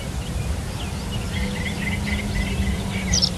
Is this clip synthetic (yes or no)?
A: no